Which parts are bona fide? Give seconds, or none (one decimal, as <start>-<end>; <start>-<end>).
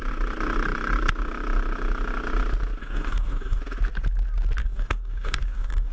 0.0-2.8; 3.6-4.6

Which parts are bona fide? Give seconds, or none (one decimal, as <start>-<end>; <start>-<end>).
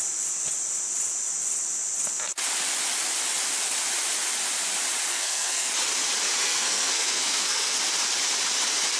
0.0-5.1; 5.7-6.4; 7.8-9.0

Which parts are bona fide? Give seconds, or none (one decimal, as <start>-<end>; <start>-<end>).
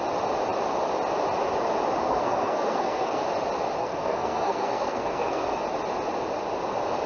0.0-2.0; 3.2-3.8; 5.6-7.1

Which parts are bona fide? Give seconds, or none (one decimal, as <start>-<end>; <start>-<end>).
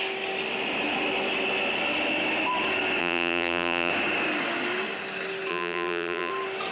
0.0-3.0; 3.9-5.5; 6.3-6.7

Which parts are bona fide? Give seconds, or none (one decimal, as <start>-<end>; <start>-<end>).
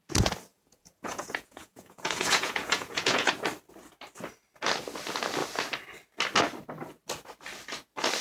0.0-0.5; 3.3-8.2